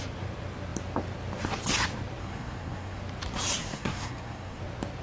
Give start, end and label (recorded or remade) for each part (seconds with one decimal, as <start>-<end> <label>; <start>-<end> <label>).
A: 0.0-2.2 recorded; 2.2-3.0 remade; 3.0-3.6 recorded; 3.6-4.6 remade; 4.6-5.0 recorded